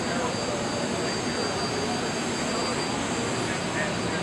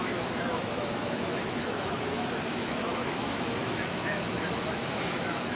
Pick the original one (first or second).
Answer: first